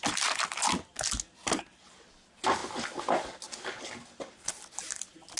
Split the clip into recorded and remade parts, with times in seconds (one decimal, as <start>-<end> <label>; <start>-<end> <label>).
0.0-5.4 recorded